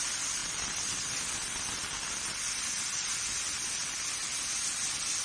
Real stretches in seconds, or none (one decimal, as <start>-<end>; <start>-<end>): 0.0-5.2